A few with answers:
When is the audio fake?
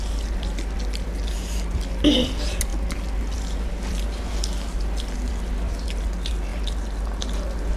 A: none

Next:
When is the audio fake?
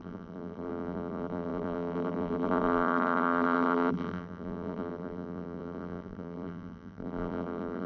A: 0.0-7.9 (vocoder, BigVGAN v2)